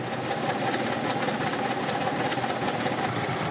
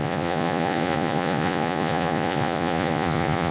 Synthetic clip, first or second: second